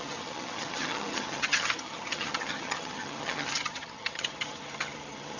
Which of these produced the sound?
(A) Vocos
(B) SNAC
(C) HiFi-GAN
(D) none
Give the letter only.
C